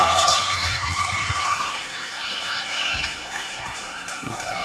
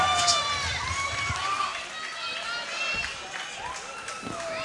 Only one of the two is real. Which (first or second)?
second